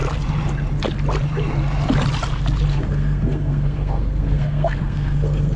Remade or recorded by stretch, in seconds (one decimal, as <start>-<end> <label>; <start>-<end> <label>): 0.0-2.7 recorded; 2.7-5.6 remade